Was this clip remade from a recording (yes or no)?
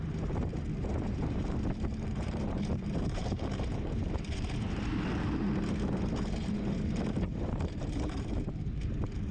yes